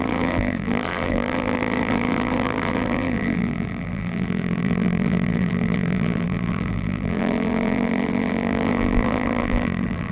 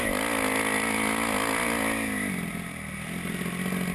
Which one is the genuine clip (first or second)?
second